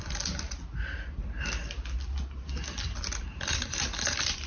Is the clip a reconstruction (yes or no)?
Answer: no